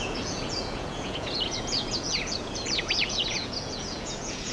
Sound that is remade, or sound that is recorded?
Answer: remade